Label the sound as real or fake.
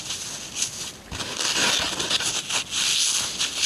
real